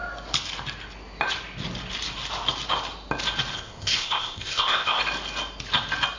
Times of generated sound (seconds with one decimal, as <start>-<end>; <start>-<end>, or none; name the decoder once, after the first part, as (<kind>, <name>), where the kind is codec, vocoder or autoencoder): 3.5-5.0 (codec, ZipCodec)